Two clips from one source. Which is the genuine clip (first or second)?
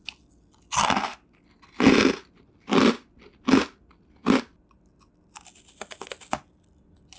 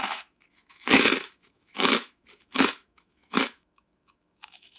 first